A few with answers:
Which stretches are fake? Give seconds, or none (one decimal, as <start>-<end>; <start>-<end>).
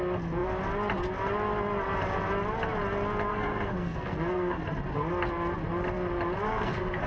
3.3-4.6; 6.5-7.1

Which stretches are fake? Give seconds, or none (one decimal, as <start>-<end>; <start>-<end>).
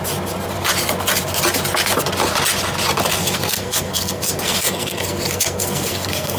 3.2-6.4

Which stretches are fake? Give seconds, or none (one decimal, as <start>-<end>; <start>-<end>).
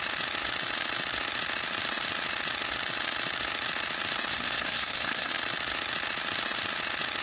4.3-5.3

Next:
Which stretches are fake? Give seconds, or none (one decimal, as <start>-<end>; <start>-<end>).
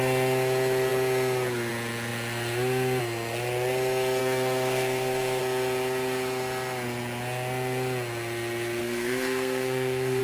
4.2-5.4; 8.8-10.2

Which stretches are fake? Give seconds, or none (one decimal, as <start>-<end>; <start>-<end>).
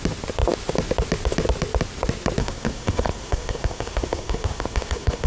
2.4-5.3